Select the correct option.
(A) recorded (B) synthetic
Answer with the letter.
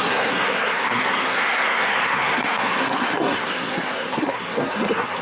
B